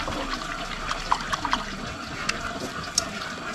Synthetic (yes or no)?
no